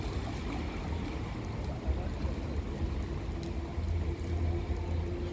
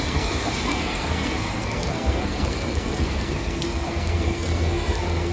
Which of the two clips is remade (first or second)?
second